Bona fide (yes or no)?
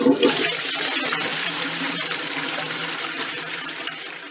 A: no